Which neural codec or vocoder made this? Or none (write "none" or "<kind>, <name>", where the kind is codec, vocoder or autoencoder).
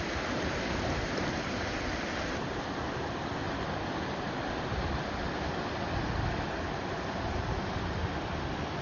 vocoder, BigVGAN v2